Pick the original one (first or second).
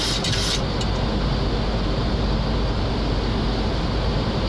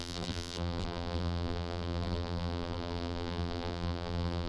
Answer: first